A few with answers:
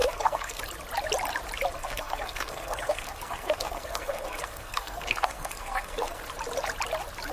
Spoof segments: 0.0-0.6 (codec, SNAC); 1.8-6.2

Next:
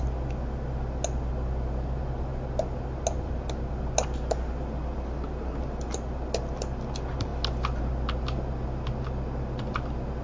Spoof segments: none